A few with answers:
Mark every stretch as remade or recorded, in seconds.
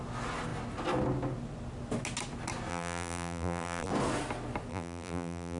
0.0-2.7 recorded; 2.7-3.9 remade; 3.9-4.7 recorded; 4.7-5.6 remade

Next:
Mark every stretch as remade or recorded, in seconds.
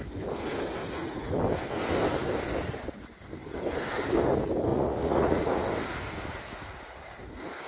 0.0-0.8 recorded; 0.8-1.3 remade; 1.3-4.7 recorded; 4.7-5.6 remade; 5.6-7.7 recorded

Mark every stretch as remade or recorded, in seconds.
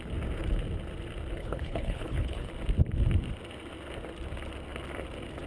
0.0-1.4 recorded; 1.4-2.5 remade; 2.5-5.5 recorded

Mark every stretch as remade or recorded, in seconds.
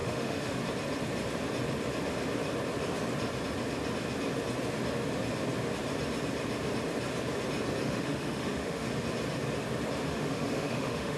0.0-0.6 remade; 0.6-7.8 recorded; 7.8-8.9 remade; 8.9-10.1 recorded; 10.1-11.2 remade